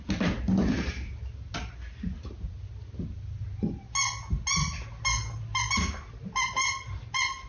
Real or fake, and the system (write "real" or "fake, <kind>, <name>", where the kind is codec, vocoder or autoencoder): real